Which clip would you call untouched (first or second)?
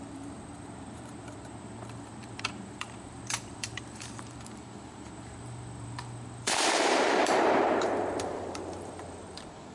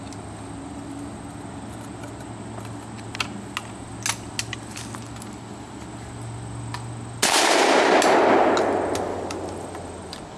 second